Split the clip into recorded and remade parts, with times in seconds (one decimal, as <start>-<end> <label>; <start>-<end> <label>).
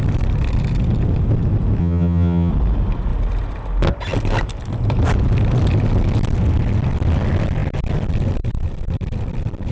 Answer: 0.0-1.8 recorded; 1.8-2.5 remade; 2.5-9.7 recorded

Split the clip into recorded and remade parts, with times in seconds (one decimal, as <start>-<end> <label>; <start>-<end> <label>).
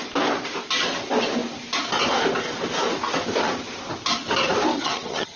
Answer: 0.0-4.7 recorded; 4.7-5.4 remade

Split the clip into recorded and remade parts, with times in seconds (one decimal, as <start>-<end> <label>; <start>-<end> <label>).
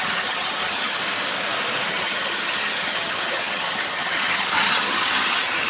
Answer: 0.0-1.0 remade; 1.0-1.9 recorded; 1.9-5.7 remade